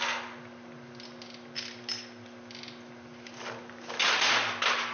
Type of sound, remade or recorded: recorded